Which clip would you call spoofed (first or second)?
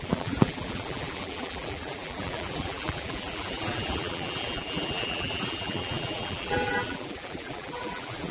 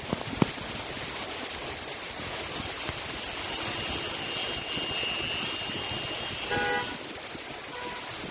first